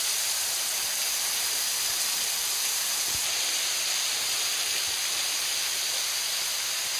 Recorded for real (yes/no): yes